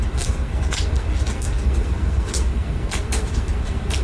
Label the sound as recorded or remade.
remade